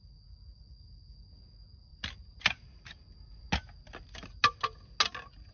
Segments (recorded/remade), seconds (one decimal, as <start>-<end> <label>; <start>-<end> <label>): 0.0-5.5 recorded